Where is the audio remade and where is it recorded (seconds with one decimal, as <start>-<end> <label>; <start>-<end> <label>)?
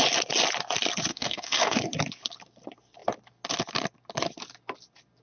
0.0-1.1 recorded; 1.1-1.8 remade; 1.8-5.2 recorded